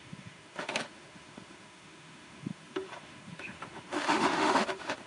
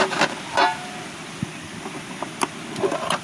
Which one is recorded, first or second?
second